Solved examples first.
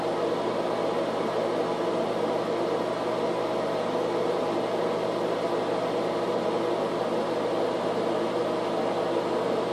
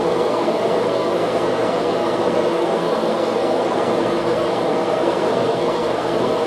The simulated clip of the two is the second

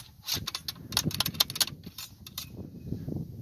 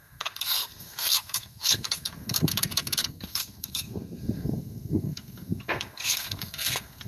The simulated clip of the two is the second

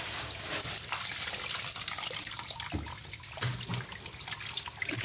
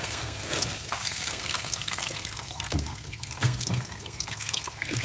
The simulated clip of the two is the second